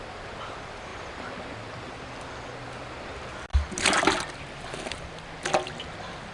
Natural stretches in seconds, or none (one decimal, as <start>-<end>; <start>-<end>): 0.0-6.3

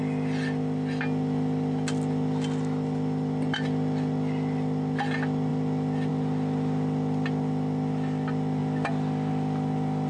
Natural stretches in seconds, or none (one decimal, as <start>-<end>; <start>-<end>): 0.0-10.1